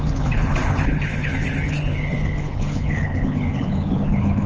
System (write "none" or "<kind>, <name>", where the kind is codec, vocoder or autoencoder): codec, HILCodec